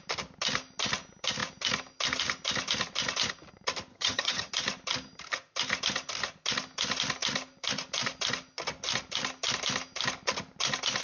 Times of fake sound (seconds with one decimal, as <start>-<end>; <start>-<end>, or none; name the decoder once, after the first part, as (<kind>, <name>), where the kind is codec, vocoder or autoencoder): 3.9-4.5 (vocoder, HiFi-GAN)